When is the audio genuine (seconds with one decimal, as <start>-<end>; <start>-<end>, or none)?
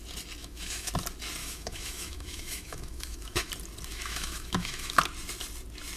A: 0.0-0.4; 0.9-1.4; 3.5-3.9; 5.0-6.0